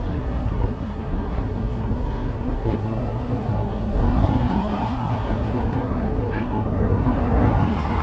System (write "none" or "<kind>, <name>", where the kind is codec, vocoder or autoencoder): codec, SNAC